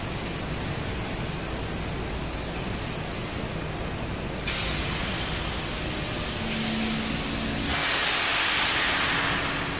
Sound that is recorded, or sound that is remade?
recorded